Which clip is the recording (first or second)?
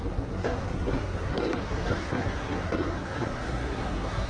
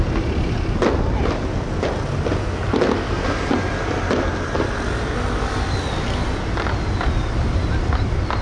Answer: second